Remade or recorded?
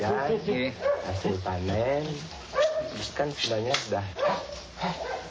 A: recorded